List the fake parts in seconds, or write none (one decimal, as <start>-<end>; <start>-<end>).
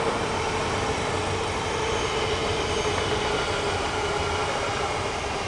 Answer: none